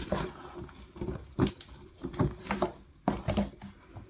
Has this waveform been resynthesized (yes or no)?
no